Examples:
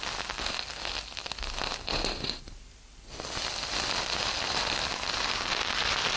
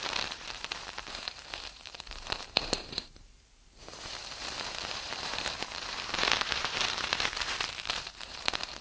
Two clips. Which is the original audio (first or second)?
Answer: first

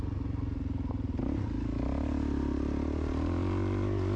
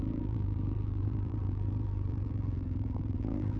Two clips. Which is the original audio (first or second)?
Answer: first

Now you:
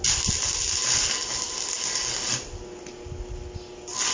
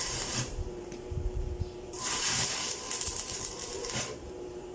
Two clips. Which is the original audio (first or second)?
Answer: first